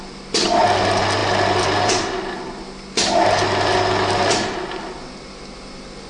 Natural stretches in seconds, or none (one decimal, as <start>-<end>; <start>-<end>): 0.0-6.1